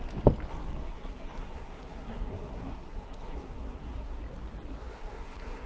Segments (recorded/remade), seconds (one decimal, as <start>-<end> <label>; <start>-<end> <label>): 0.0-0.8 recorded; 0.8-4.2 remade; 4.2-4.8 recorded; 4.8-5.7 remade